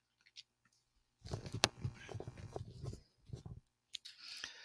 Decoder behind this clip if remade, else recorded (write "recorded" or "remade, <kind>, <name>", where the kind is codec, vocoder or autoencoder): recorded